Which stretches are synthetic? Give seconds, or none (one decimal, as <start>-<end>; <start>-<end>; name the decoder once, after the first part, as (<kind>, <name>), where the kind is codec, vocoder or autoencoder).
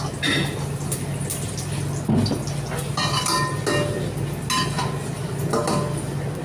none